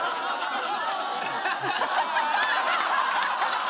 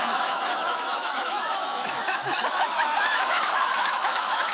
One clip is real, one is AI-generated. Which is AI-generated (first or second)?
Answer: second